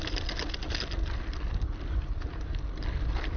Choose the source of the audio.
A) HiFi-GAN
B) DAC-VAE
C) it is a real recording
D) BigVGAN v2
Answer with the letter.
C